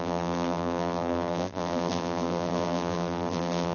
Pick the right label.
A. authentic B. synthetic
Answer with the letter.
B